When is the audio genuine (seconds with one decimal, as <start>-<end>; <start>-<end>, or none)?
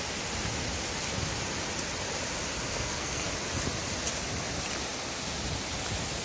0.0-2.7; 3.3-6.2